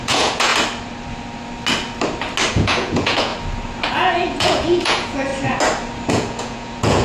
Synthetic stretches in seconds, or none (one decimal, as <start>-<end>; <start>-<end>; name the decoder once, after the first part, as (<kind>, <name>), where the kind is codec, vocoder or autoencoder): 0.0-0.5 (vocoder, Vocos); 2.5-3.3; 3.9-5.3; 6.1-7.0